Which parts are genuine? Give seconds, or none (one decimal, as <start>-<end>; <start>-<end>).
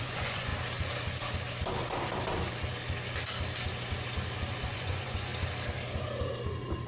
0.5-4.6; 5.3-6.9